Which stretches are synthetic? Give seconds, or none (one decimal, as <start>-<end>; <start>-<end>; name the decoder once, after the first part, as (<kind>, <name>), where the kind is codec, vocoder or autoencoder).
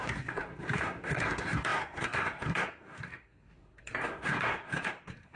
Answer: 0.0-5.4 (codec, SNAC)